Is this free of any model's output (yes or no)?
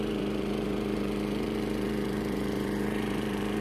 no